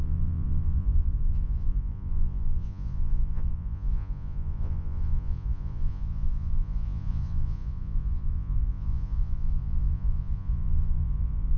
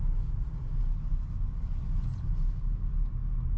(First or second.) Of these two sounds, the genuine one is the second